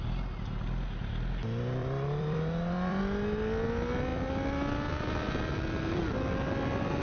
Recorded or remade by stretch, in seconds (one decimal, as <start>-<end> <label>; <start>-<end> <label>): 0.0-1.8 recorded; 1.8-3.0 remade; 3.0-4.1 recorded; 4.1-4.9 remade; 4.9-7.0 recorded